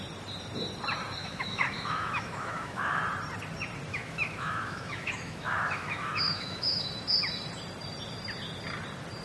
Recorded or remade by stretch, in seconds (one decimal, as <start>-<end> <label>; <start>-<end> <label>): 0.0-1.2 recorded; 1.2-3.0 remade; 3.0-3.9 recorded; 3.9-6.9 remade; 6.9-9.2 recorded